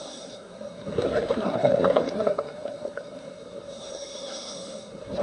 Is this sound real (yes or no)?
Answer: no